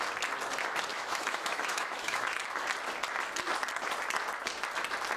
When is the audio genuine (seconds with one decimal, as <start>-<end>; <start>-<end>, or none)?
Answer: 0.0-0.9; 2.3-5.2